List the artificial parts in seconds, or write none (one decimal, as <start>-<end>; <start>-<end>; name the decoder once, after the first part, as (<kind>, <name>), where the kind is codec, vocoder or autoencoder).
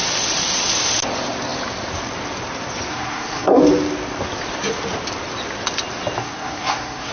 2.9-3.6 (codec, SNAC); 6.2-7.1